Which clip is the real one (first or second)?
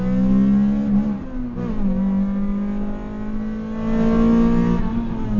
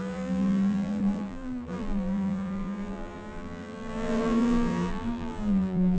first